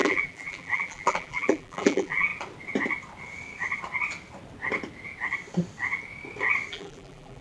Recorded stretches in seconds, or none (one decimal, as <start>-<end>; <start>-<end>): 2.3-6.7